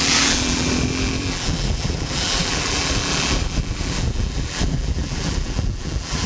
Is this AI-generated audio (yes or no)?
yes